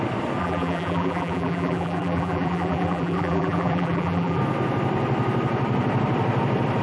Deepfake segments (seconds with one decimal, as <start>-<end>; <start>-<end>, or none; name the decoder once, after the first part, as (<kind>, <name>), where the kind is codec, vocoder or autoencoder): 0.4-4.4 (vocoder, BigVGAN v2)

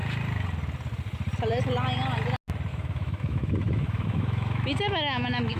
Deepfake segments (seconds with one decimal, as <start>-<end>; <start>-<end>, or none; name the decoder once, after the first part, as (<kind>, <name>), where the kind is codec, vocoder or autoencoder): 2.7-5.6 (autoencoder, DAC-VAE)

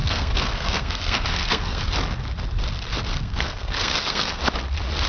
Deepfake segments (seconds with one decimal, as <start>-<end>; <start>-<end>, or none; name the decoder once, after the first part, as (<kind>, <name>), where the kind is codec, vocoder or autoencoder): 0.0-1.8 (codec, SNAC); 3.1-4.4

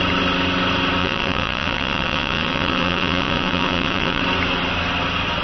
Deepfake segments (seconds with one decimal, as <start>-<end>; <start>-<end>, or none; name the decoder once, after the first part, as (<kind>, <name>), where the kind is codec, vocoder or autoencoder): 1.0-4.2 (vocoder, WaveNeXt)